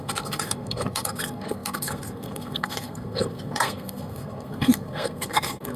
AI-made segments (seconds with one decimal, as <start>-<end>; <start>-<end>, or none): 0.0-5.8